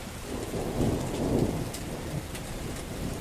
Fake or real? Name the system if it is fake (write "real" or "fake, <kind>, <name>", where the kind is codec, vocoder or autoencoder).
fake, vocoder, BigVGAN v2